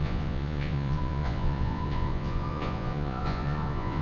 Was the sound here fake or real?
fake